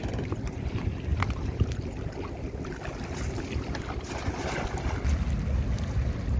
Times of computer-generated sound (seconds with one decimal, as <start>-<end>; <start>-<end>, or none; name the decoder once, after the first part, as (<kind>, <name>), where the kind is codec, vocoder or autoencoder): 1.1-4.9 (vocoder, BigVGAN v2)